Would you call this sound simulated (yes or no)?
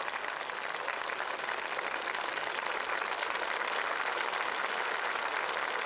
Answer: no